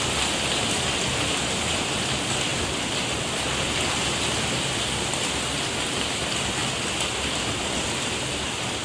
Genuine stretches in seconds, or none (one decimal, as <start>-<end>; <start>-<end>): 0.0-8.8